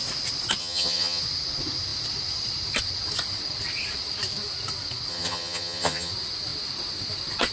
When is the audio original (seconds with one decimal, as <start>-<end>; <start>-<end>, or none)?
0.0-0.6; 1.2-5.1; 6.1-7.5